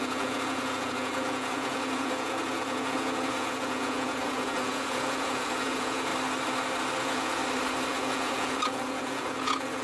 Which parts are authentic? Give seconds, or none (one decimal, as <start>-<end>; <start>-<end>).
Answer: 6.1-7.0; 7.4-7.9